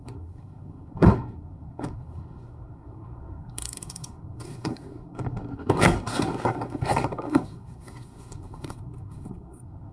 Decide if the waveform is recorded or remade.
remade